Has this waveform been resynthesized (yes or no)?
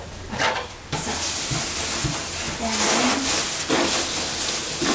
no